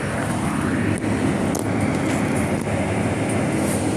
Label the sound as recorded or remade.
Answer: recorded